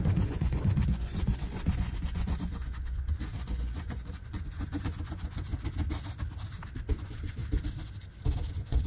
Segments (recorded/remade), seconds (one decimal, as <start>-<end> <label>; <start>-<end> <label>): 0.0-5.5 remade; 5.5-6.9 recorded; 6.9-7.4 remade; 7.4-8.5 recorded; 8.5-8.9 remade